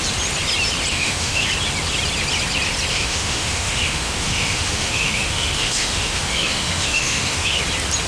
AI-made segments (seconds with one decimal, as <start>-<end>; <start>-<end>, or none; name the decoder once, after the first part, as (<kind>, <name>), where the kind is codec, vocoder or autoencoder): 0.9-1.5 (autoencoder, DAC-VAE); 2.9-7.6